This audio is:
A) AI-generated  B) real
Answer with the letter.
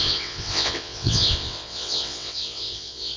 A